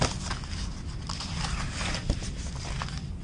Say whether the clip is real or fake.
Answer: real